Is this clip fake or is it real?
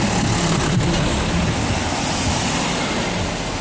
real